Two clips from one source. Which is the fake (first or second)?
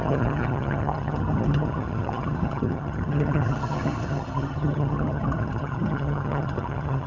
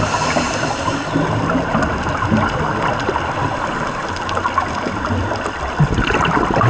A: first